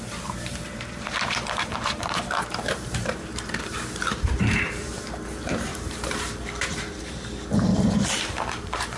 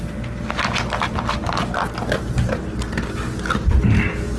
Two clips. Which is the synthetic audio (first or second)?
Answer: first